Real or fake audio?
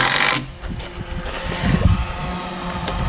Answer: real